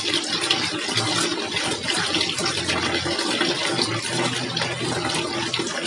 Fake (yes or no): no